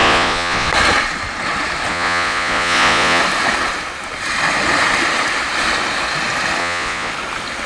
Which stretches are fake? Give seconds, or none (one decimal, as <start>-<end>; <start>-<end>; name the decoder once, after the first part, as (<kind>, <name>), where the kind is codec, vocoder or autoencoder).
0.0-0.7 (vocoder, Vocos); 1.9-3.2; 6.6-7.1